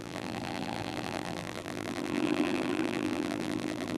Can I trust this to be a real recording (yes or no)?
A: no